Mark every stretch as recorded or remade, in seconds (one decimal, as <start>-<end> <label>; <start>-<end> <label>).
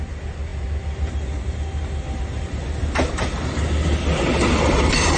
0.0-5.2 recorded